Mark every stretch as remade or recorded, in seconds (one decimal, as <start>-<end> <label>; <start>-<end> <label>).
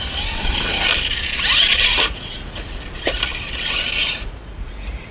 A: 0.0-1.9 recorded; 1.9-2.7 remade; 2.7-4.0 recorded; 4.0-5.1 remade